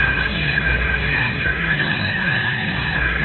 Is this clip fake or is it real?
fake